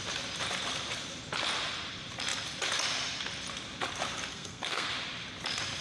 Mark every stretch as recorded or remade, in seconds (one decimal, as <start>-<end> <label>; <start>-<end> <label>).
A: 0.0-4.3 recorded; 4.3-4.9 remade; 4.9-5.8 recorded